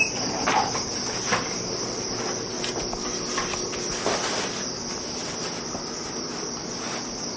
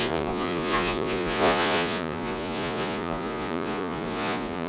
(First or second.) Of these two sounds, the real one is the first